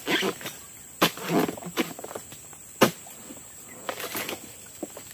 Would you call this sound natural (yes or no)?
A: no